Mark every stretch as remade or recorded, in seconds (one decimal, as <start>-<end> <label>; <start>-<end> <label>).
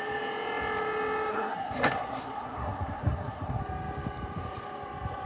0.0-1.3 recorded; 1.3-3.6 remade; 3.6-5.3 recorded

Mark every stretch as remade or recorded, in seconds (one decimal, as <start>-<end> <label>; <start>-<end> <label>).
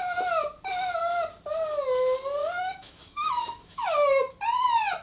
0.0-2.4 recorded; 2.4-4.3 remade; 4.3-5.0 recorded